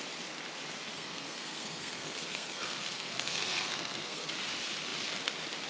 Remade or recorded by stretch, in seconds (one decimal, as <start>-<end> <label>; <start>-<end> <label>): 0.0-0.9 recorded; 0.9-4.3 remade; 4.3-5.7 recorded